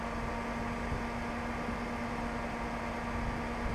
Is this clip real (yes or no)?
yes